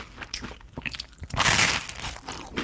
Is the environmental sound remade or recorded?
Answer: recorded